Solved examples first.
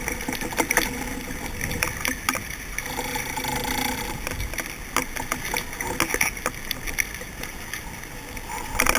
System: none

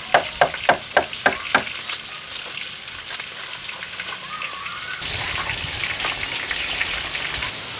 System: none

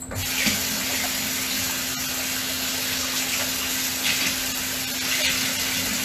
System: none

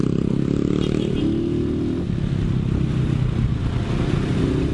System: none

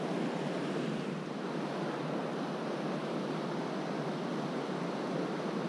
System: none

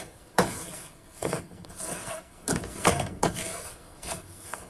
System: codec, SNAC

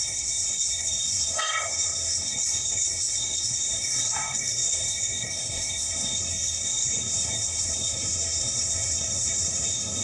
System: codec, SNAC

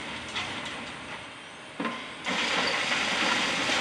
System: none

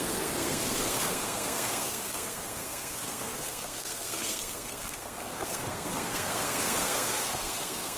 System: codec, SNAC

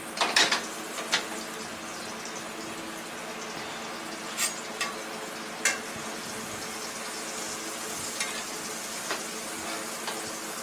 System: none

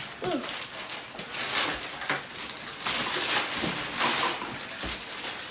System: none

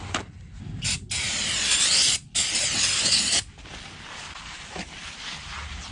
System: none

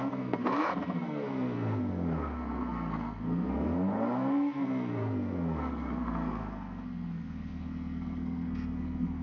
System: codec, SNAC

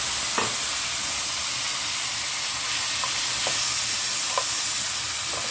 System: none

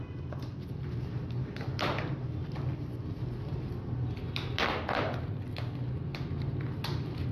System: none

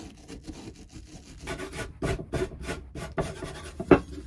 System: none